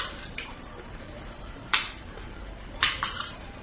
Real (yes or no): no